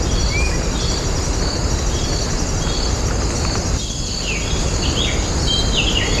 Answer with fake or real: real